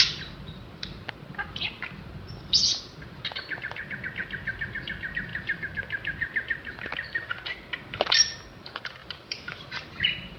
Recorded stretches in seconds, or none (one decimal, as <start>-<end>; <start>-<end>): 0.0-9.0